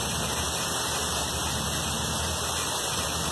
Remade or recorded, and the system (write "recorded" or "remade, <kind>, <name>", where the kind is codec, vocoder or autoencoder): recorded